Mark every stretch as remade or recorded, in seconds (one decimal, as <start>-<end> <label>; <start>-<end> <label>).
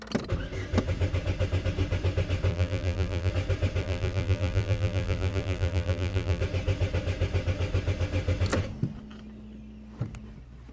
0.0-2.5 recorded; 2.5-3.3 remade; 3.3-3.8 recorded; 3.8-6.4 remade; 6.4-10.7 recorded